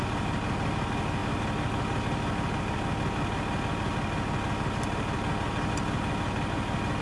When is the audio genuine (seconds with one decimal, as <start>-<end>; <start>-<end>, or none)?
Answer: 0.0-7.0